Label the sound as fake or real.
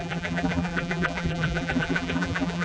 fake